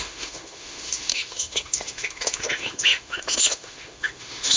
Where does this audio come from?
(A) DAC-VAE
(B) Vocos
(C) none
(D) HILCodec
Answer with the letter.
A